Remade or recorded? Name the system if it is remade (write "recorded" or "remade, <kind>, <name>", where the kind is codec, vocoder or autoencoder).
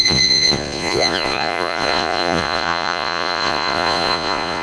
remade, vocoder, Vocos